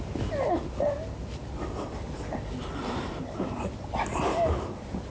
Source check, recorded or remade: recorded